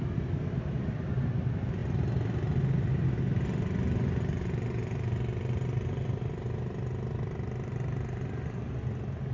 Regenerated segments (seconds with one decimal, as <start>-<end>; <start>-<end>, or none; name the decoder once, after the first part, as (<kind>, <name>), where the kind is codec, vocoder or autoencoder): none